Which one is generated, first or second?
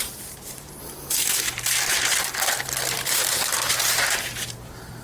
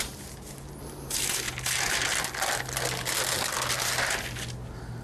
first